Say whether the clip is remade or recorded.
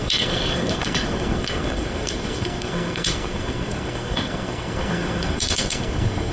remade